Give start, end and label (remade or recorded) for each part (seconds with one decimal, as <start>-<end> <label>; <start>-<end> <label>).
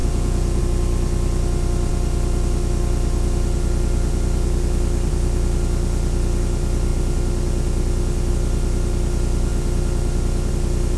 0.0-0.6 remade; 0.6-11.0 recorded